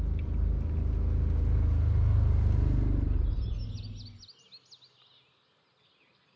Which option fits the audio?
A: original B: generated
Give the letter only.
A